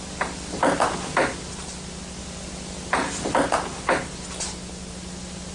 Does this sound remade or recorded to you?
recorded